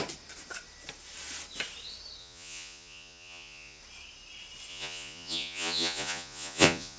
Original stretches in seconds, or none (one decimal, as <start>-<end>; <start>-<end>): 0.0-2.2; 3.8-4.7